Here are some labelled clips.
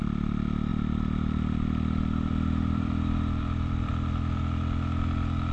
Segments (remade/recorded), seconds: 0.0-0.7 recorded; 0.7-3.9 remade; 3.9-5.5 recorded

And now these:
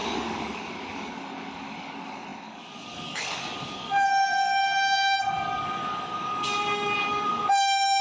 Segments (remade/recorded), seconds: 0.0-8.0 remade